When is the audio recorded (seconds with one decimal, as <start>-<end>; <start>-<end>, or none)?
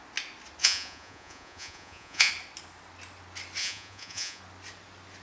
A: 0.0-0.6; 2.3-3.6; 4.4-5.2